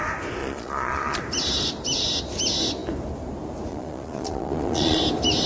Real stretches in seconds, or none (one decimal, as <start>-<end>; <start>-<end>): 0.0-0.4; 1.2-3.7; 5.0-5.5